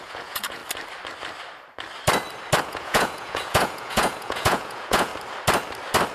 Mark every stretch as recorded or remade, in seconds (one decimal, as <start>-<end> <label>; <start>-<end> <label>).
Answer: 0.0-0.6 remade; 0.6-2.6 recorded; 2.6-5.1 remade; 5.1-6.1 recorded